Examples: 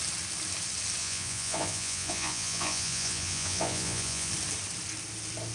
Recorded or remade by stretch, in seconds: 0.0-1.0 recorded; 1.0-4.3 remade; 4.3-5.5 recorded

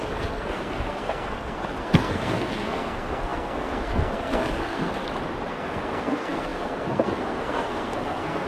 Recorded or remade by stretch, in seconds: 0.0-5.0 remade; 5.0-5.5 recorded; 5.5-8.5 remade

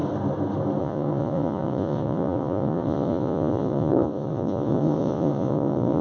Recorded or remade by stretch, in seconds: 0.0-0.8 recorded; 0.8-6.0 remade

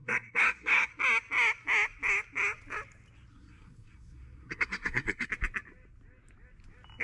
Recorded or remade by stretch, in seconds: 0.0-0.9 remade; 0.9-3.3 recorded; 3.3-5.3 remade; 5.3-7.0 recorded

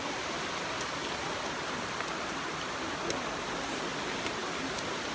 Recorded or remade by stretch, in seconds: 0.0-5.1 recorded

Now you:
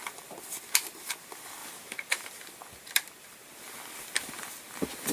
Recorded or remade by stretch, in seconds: 0.0-5.1 recorded